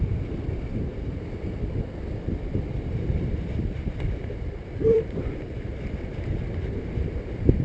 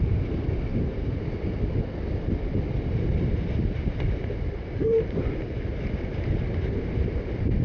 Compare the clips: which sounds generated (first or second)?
first